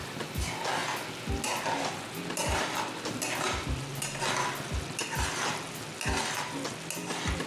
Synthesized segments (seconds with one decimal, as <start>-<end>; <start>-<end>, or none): none

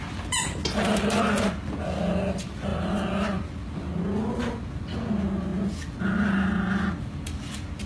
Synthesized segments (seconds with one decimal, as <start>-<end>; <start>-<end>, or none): none